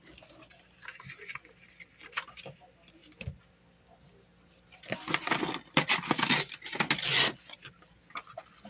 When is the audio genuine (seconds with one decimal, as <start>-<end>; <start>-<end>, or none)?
0.0-8.7